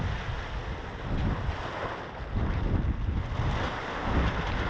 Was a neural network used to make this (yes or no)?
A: no